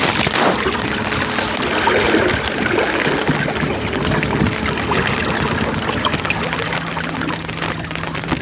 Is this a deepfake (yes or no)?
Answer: no